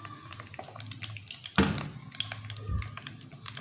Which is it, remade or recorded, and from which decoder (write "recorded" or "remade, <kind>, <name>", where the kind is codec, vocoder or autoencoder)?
recorded